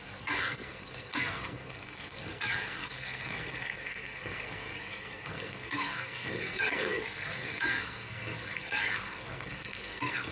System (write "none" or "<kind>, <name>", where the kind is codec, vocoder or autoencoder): codec, SNAC